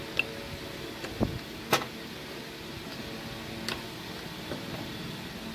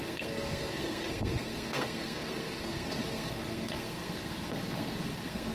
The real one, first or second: first